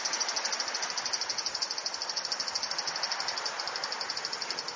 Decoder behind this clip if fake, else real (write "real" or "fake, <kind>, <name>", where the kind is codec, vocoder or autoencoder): real